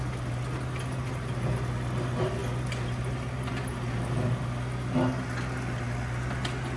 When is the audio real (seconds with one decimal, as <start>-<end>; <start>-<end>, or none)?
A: 0.0-6.8